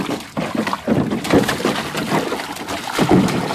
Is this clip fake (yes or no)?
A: no